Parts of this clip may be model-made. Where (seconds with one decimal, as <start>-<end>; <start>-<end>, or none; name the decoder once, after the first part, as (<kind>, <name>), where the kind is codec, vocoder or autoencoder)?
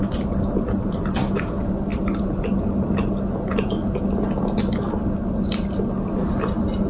none